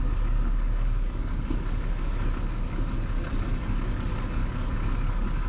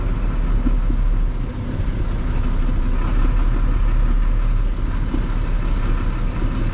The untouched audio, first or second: second